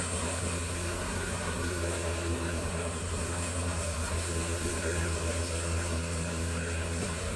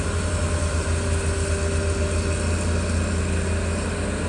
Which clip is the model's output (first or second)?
first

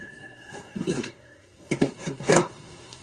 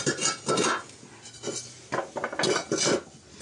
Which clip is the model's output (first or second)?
first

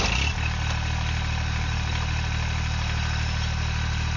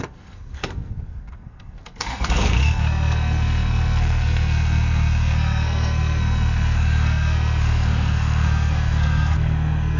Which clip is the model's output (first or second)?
second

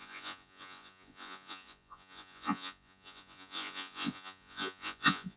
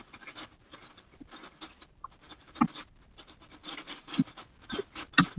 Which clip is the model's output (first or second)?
first